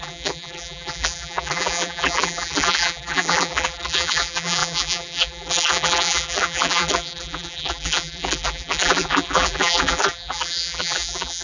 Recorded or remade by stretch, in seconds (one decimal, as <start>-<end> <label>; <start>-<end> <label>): 0.0-11.4 remade